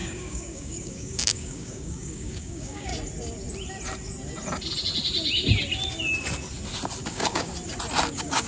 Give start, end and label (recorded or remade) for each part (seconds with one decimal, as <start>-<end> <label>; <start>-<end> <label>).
0.0-2.9 remade; 2.9-7.1 recorded; 7.1-7.5 remade; 7.5-8.1 recorded; 8.1-8.5 remade

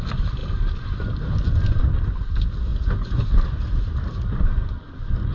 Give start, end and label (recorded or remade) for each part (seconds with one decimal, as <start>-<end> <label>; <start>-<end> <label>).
0.0-2.7 remade; 2.7-5.3 recorded

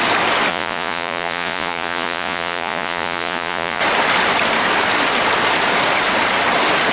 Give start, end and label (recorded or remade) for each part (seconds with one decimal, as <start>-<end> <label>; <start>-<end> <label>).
0.0-0.5 recorded; 0.5-3.8 remade; 3.8-6.9 recorded

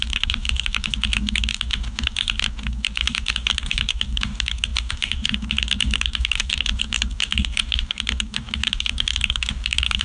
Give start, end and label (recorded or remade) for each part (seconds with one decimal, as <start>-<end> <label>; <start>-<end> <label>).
0.0-10.0 remade

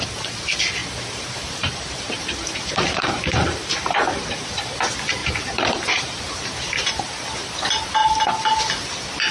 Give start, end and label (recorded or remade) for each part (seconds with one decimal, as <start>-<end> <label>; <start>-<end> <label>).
0.0-0.8 recorded; 0.8-4.7 remade; 4.7-5.2 recorded; 5.2-7.5 remade; 7.5-8.0 recorded; 8.0-8.6 remade; 8.6-9.3 recorded